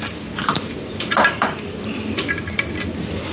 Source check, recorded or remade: remade